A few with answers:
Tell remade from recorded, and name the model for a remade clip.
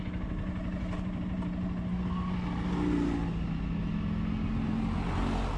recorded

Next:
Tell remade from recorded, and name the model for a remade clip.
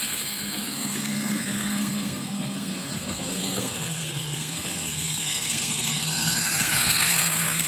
remade, codec, SNAC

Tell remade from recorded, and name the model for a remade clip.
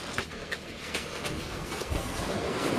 remade, codec, SNAC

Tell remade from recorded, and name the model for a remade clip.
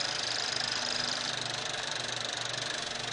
recorded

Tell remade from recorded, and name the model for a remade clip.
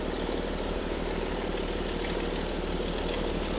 recorded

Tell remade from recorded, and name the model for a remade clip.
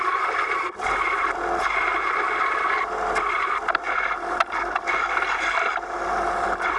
recorded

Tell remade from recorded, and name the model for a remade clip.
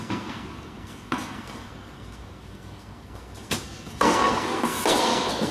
remade, codec, SNAC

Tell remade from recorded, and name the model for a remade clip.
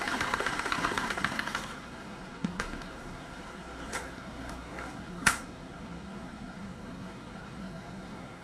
remade, codec, SNAC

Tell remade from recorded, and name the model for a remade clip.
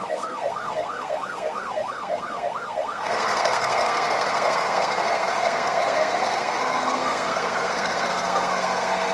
remade, codec, SNAC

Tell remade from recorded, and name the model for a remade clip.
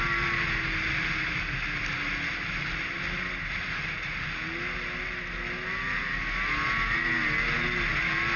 recorded